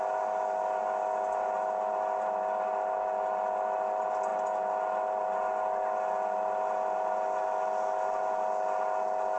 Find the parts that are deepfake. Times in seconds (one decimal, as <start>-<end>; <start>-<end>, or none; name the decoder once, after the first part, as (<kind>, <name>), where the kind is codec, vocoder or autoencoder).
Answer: none